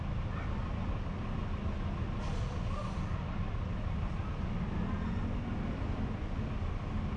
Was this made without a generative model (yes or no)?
yes